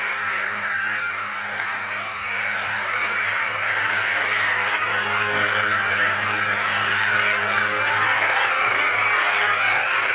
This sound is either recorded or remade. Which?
remade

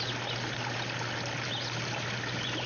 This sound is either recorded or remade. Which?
recorded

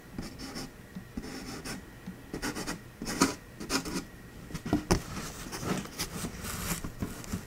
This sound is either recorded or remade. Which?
recorded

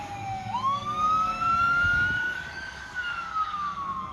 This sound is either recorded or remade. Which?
remade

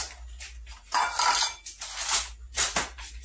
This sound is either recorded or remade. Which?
recorded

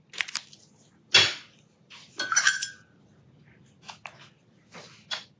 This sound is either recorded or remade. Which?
recorded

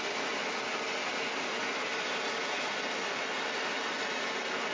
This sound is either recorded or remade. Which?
recorded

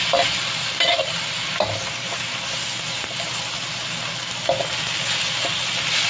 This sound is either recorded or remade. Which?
recorded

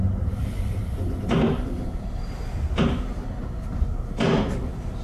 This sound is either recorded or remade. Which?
recorded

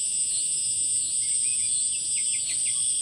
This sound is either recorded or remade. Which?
recorded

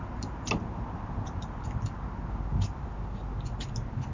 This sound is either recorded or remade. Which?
recorded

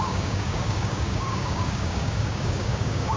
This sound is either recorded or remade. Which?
remade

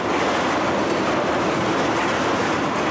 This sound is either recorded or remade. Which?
recorded